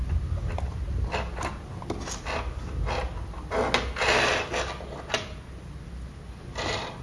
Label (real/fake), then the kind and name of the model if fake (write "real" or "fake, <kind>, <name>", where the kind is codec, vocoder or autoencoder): real